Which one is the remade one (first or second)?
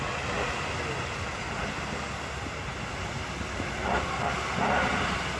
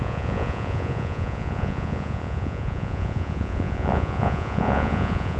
second